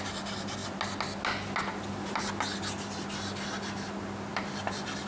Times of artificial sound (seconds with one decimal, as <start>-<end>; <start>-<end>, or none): none